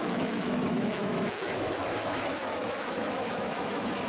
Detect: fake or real fake